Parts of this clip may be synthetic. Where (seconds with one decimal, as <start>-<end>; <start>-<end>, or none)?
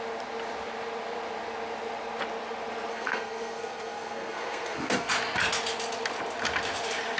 2.9-5.1